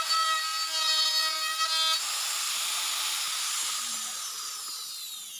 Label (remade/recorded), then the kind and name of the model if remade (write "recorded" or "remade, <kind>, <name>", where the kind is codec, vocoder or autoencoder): recorded